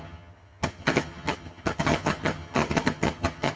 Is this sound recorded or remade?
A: remade